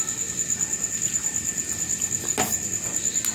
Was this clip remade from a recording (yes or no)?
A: no